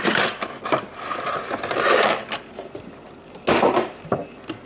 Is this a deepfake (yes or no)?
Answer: no